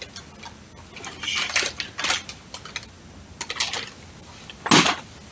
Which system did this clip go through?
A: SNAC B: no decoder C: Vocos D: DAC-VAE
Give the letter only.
B